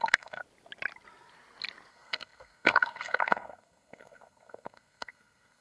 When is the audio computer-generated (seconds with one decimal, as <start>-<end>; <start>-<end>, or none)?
0.0-0.4; 1.9-5.6